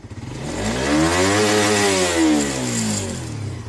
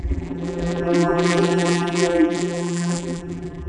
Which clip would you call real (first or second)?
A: first